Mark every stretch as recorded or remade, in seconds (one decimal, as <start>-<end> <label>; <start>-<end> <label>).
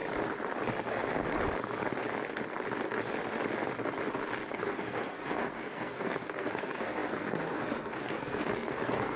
0.0-4.5 recorded; 4.5-9.2 remade